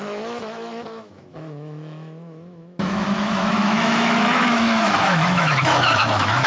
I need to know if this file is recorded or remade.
remade